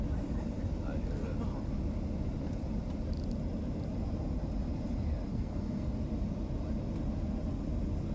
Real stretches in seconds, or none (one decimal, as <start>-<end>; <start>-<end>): 0.0-5.3; 5.9-8.1